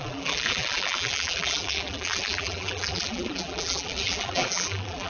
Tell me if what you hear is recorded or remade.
remade